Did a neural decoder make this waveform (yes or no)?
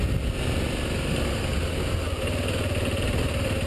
no